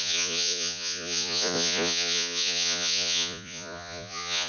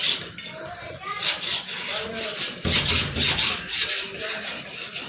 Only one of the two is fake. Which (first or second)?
first